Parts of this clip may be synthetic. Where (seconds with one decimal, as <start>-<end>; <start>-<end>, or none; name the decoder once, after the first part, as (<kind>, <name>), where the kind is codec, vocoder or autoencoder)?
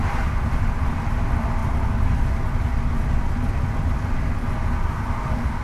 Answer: none